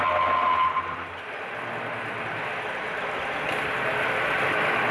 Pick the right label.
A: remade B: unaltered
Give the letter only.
B